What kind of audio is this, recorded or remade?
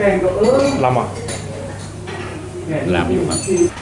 remade